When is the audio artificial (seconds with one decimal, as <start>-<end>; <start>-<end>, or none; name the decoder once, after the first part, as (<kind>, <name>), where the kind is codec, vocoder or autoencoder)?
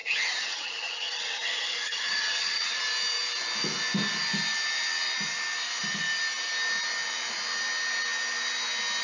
0.0-2.8 (vocoder, HiFi-GAN)